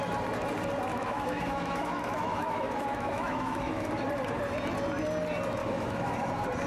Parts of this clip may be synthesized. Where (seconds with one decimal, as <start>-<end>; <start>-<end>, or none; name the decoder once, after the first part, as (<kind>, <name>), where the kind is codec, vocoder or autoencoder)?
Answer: 0.9-3.9 (autoencoder, DAC-VAE); 5.6-6.3